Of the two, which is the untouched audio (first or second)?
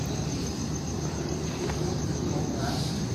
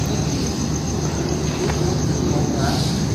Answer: second